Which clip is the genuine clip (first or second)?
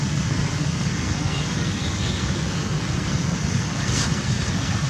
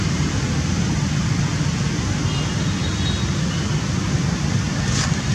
second